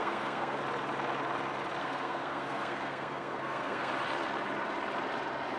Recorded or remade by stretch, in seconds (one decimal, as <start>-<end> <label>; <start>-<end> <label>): 0.0-0.6 remade; 0.6-1.8 recorded; 1.8-3.9 remade; 3.9-5.6 recorded

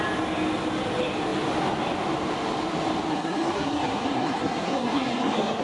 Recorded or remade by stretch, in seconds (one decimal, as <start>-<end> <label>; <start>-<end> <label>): 0.0-3.1 recorded; 3.1-5.6 remade

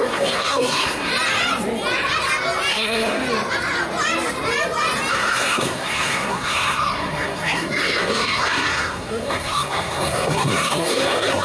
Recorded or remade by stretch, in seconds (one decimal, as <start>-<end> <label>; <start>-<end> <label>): 0.0-1.1 remade; 1.1-2.7 recorded; 2.7-3.2 remade; 3.2-5.1 recorded; 5.1-11.4 remade

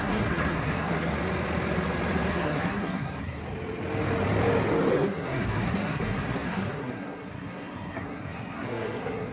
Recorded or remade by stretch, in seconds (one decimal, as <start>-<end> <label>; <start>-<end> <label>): 0.0-1.1 remade; 1.1-2.3 recorded; 2.3-3.4 remade; 3.4-4.9 recorded; 4.9-9.3 remade

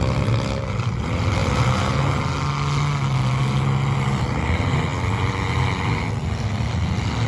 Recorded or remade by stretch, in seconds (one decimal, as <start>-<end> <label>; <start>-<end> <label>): 0.0-7.3 recorded

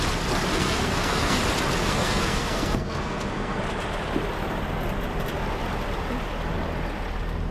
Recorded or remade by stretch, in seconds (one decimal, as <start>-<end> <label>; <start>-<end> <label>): 0.0-0.5 recorded; 0.5-1.4 remade; 1.4-1.8 recorded; 1.8-3.6 remade; 3.6-7.5 recorded

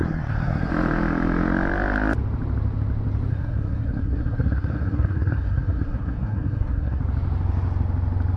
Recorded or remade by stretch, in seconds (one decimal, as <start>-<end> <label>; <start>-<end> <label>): 0.0-0.7 remade; 0.7-3.3 recorded; 3.3-7.0 remade; 7.0-8.4 recorded